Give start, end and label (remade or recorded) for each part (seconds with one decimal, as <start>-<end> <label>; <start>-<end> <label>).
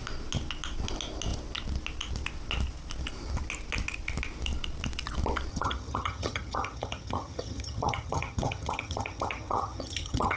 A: 0.0-5.5 recorded; 5.5-10.4 remade